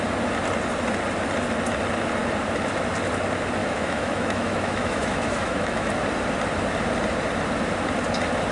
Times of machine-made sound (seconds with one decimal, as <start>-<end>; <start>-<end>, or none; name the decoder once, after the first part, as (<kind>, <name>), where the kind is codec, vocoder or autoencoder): 3.6-5.9 (autoencoder, DAC-VAE)

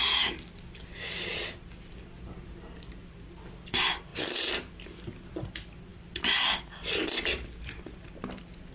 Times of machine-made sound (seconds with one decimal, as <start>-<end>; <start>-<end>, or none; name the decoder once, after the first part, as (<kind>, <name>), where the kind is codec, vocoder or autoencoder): none